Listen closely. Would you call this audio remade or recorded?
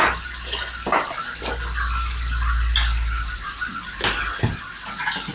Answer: recorded